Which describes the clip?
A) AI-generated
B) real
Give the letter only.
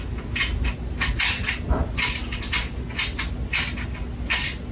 B